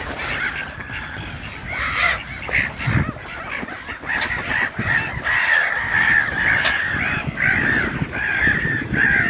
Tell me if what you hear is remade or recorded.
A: recorded